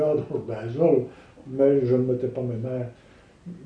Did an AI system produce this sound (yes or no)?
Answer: no